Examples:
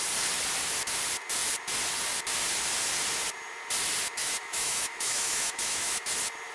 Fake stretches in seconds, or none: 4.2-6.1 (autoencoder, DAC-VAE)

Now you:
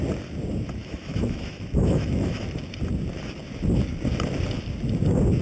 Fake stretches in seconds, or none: 0.8-2.5 (autoencoder, DAC-VAE)